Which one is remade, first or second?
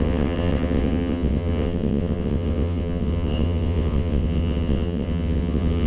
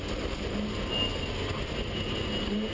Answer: first